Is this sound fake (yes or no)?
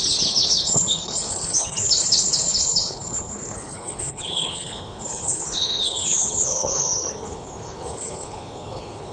yes